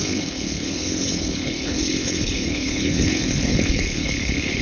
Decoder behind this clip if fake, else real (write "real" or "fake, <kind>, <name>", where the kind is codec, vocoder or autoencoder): fake, codec, HILCodec